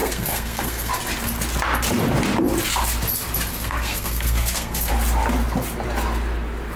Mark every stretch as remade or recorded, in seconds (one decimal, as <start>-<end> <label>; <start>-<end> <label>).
0.0-0.9 remade; 0.9-3.5 recorded; 3.5-4.9 remade; 4.9-6.8 recorded